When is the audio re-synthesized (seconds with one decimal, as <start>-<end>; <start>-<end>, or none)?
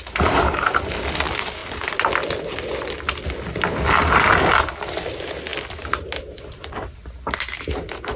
0.0-1.6; 4.9-8.2